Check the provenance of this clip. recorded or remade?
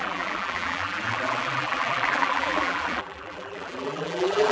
remade